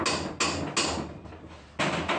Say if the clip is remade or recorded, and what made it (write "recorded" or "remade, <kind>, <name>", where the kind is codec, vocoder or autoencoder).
recorded